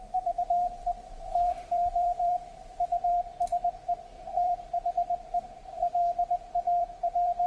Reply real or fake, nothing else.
fake